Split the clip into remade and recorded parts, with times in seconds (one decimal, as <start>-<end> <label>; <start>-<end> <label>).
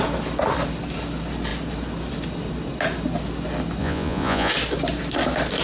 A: 0.0-3.8 recorded; 3.8-4.5 remade; 4.5-5.6 recorded